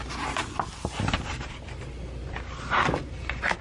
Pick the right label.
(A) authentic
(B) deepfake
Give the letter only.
A